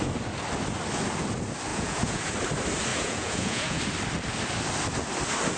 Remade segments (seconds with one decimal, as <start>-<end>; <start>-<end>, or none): 1.7-2.3; 2.9-3.8

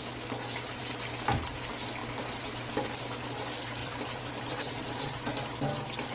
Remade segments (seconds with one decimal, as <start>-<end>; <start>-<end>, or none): 3.8-5.0

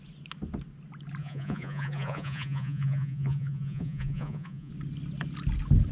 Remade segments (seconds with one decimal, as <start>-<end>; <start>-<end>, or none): 1.2-4.7

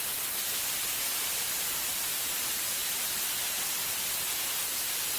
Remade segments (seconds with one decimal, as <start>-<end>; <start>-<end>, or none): none

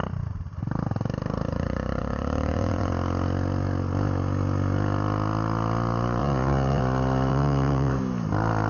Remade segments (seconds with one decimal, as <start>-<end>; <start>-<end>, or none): 1.5-2.9; 6.2-6.8; 7.3-7.9

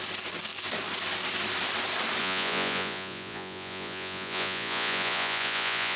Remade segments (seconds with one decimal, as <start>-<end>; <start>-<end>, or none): 2.2-6.0

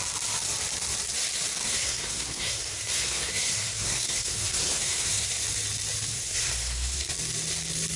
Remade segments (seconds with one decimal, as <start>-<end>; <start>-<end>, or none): 1.6-5.3; 6.1-7.1